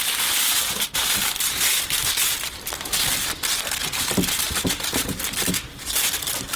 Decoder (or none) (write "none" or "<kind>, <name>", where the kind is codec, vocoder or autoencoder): none